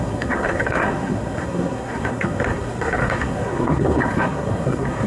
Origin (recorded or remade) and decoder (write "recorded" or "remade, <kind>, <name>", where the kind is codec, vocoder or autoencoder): remade, codec, SNAC